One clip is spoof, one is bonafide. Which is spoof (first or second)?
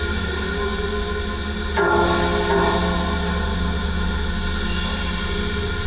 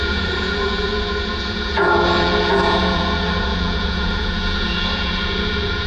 second